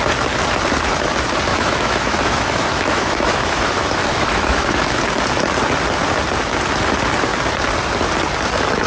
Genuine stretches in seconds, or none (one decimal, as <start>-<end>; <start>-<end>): 0.0-1.5; 5.0-8.9